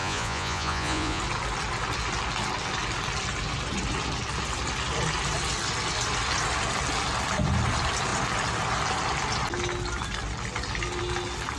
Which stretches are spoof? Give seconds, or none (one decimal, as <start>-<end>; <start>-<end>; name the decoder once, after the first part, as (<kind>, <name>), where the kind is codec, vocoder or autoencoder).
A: 0.0-1.2 (vocoder, Vocos)